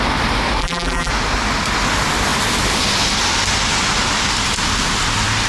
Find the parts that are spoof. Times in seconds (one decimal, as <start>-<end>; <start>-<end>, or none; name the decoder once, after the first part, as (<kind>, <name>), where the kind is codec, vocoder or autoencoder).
0.6-1.1 (vocoder, BigVGAN v2)